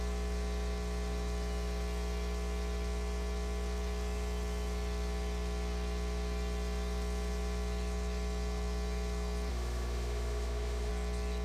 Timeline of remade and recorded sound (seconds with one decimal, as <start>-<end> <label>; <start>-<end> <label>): 0.0-9.5 recorded; 9.5-10.9 remade; 10.9-11.4 recorded